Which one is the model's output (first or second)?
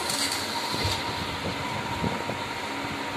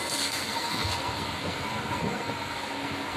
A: second